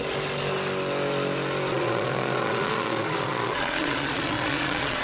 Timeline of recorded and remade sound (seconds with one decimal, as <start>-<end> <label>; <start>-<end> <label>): 0.0-1.7 recorded; 1.7-5.0 remade